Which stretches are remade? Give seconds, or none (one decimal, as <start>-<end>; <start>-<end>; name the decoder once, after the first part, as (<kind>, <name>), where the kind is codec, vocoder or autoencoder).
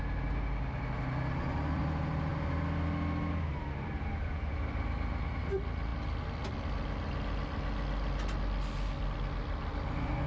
none